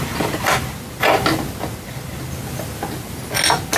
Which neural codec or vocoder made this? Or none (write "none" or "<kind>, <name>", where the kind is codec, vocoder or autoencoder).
none